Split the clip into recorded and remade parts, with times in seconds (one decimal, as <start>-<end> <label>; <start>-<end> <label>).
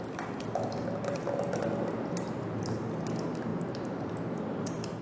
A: 0.0-3.5 recorded; 3.5-5.0 remade